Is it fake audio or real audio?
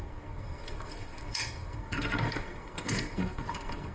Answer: fake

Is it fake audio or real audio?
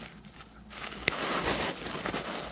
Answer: real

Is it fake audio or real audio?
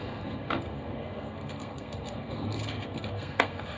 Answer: fake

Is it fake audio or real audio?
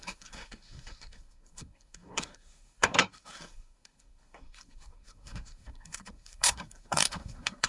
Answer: fake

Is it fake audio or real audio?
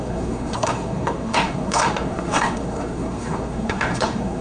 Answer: fake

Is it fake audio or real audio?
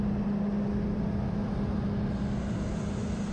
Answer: real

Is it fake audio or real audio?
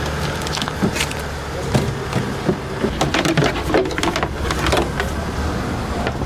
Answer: real